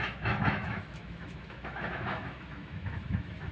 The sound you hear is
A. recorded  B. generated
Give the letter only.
B